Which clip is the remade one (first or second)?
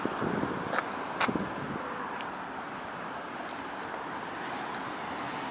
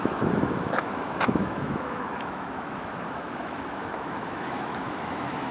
second